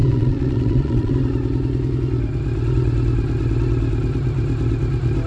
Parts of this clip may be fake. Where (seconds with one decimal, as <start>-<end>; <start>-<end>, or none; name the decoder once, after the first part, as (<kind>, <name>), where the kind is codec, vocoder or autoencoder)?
0.0-1.1 (vocoder, Vocos)